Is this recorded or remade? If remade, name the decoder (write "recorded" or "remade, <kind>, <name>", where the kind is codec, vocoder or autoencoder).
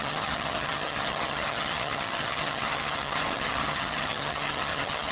remade, vocoder, HiFi-GAN